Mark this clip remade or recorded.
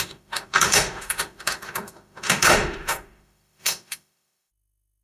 remade